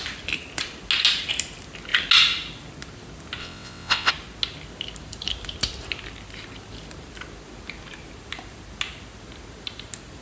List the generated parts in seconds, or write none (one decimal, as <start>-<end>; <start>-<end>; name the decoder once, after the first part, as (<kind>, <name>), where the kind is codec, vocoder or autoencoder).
3.4-4.1 (vocoder, WaveNeXt)